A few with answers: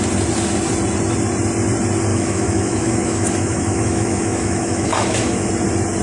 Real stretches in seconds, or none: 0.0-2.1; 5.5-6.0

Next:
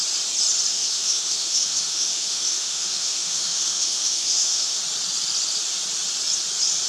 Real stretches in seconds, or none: 0.0-0.7; 4.8-6.9

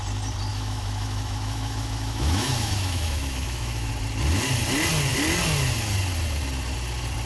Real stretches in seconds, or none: 0.0-0.5; 3.9-7.3

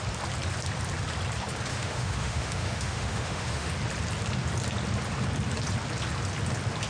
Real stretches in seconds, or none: 0.0-1.7; 3.7-6.9

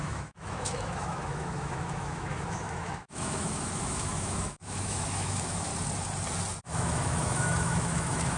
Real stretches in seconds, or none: 5.7-6.6

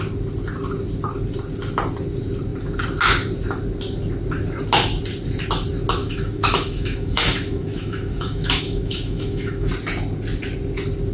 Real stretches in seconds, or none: 0.0-6.0; 9.7-11.1